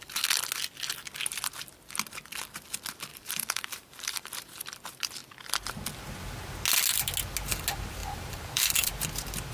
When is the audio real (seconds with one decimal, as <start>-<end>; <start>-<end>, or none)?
0.0-3.1; 4.6-8.0; 8.9-9.5